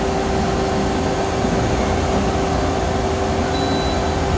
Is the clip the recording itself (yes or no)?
yes